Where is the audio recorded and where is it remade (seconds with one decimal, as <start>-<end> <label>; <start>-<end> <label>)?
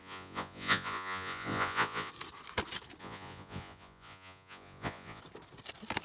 0.0-2.1 remade; 2.1-3.0 recorded; 3.0-5.2 remade; 5.2-6.0 recorded